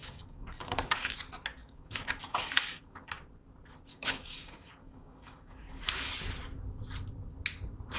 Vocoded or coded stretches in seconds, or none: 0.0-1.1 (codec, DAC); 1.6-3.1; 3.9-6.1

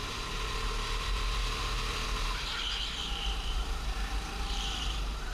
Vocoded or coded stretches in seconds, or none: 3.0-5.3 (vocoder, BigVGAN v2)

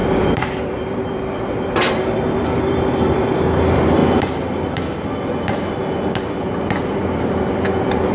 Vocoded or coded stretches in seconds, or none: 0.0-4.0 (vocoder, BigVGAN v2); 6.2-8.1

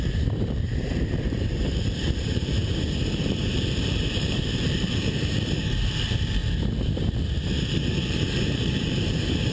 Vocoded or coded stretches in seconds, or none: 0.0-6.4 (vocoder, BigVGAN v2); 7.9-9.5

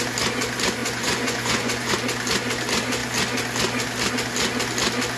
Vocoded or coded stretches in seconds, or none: 0.8-1.9 (vocoder, Vocos)

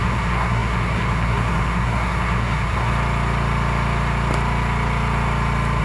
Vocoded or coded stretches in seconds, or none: 0.0-2.9 (codec, SNAC)

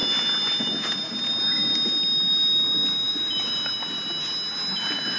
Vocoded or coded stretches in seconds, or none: none

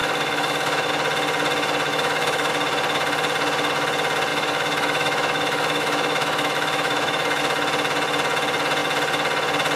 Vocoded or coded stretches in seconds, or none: 0.0-0.9 (autoencoder, DAC-VAE); 1.9-2.5; 4.3-7.4